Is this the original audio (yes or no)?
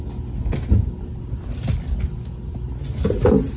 yes